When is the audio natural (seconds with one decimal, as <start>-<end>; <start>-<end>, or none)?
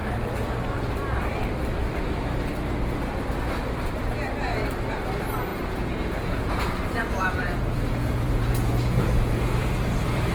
0.0-5.5; 6.6-7.0; 9.7-10.3